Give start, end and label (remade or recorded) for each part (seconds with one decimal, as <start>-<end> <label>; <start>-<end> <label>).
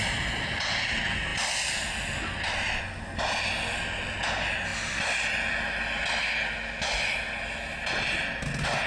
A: 0.0-8.9 recorded